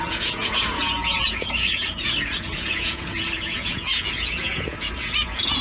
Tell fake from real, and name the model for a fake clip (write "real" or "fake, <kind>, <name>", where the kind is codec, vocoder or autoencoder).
fake, vocoder, Vocos